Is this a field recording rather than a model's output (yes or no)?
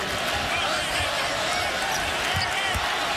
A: yes